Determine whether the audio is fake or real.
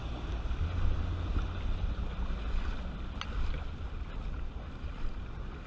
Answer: real